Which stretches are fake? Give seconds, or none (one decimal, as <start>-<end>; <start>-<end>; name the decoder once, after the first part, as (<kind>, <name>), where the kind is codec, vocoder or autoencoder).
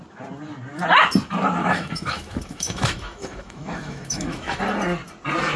1.6-4.6 (autoencoder, DAC-VAE)